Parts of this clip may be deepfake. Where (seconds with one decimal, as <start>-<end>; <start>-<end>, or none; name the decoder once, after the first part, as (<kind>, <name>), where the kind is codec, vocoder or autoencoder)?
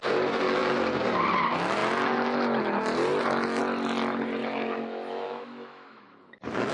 4.4-6.7 (autoencoder, DAC-VAE)